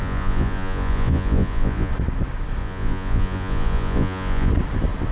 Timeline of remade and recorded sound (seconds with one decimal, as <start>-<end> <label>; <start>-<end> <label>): 0.0-1.9 remade; 1.9-2.6 recorded; 2.6-4.5 remade; 4.5-5.1 recorded